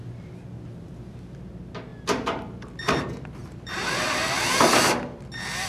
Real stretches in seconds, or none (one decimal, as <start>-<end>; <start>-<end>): 0.0-3.4; 4.6-5.7